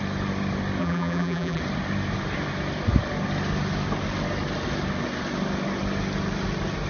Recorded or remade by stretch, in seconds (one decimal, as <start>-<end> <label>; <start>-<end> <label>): 0.0-0.8 recorded; 0.8-1.6 remade; 1.6-6.9 recorded